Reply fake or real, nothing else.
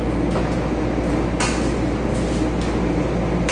real